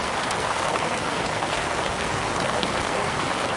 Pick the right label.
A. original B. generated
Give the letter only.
B